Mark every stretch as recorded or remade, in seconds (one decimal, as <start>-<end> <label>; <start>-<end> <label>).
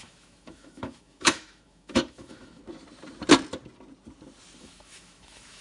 0.0-2.6 remade; 2.6-4.6 recorded; 4.6-5.6 remade